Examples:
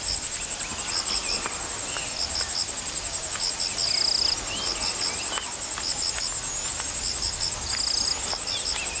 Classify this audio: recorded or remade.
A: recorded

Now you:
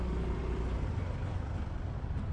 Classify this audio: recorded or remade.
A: recorded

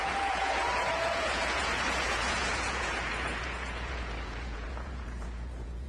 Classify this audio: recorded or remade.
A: remade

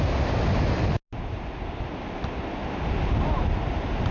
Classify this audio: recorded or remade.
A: recorded